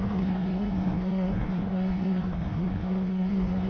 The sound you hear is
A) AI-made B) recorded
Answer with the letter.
A